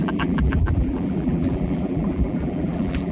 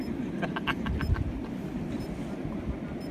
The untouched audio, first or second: second